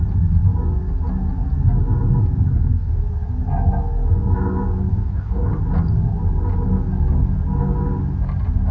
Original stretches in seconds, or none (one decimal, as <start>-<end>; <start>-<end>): 0.0-2.5; 3.0-4.9; 5.5-8.7